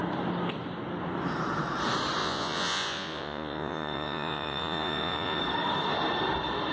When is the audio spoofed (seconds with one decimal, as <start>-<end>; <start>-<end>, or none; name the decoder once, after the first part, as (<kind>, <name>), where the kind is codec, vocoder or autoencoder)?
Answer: 2.2-5.4 (vocoder, Vocos)